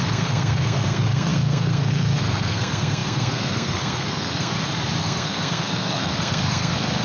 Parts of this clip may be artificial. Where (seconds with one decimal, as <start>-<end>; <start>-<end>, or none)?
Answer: 0.0-4.5; 5.0-7.0